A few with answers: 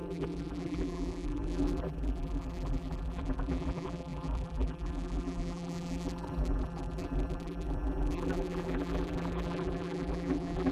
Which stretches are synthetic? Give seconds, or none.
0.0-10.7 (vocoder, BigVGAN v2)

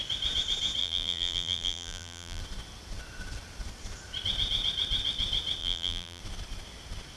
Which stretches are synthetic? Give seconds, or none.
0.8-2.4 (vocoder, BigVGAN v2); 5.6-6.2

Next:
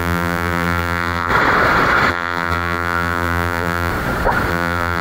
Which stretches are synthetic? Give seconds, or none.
0.0-1.3 (vocoder, BigVGAN v2); 2.1-3.9; 4.5-5.0

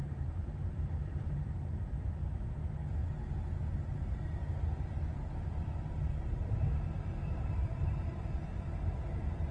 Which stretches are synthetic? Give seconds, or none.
0.0-2.2 (vocoder, BigVGAN v2); 5.5-9.5

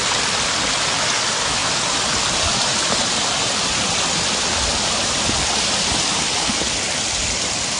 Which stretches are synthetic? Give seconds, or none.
1.6-3.8 (vocoder, BigVGAN v2); 4.7-5.2